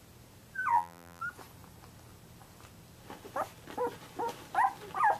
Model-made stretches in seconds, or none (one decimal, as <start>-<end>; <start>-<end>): 0.7-1.2